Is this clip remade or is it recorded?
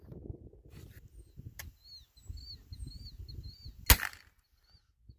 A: recorded